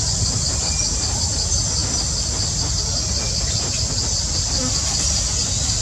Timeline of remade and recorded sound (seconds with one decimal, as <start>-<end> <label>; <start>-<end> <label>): 0.0-5.8 recorded